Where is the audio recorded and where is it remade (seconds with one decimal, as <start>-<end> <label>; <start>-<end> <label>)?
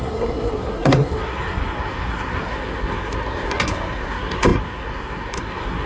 0.0-5.9 remade